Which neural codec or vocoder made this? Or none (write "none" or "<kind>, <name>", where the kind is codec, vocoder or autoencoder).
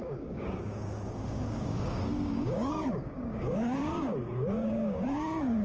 codec, DAC